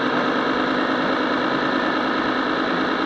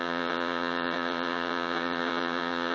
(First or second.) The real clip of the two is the first